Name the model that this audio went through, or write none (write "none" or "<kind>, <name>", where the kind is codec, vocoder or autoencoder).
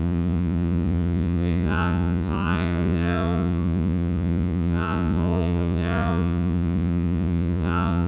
vocoder, Vocos